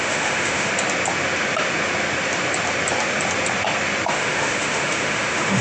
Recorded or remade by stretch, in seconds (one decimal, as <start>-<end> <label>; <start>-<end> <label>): 0.0-0.7 remade; 0.7-4.1 recorded; 4.1-5.6 remade